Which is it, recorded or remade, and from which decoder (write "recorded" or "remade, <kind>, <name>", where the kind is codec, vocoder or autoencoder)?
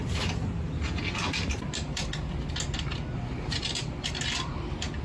recorded